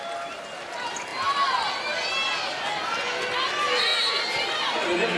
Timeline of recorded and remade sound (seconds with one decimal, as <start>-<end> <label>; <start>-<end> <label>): 0.0-5.2 recorded